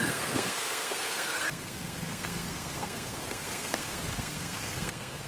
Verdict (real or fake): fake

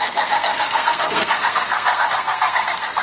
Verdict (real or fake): fake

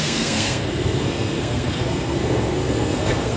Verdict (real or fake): fake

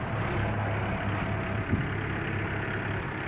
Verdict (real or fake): real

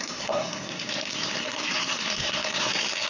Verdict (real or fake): fake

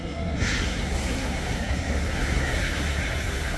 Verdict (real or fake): fake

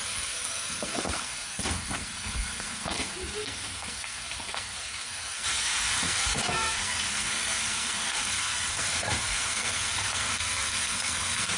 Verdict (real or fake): fake